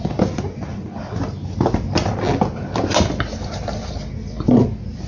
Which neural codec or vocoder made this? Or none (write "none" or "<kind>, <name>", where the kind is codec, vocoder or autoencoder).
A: none